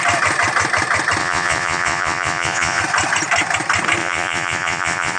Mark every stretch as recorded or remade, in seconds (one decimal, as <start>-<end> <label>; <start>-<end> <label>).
0.0-1.2 recorded; 1.2-2.8 remade; 2.8-4.0 recorded; 4.0-5.2 remade